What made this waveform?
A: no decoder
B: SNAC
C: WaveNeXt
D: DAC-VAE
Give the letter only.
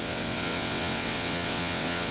C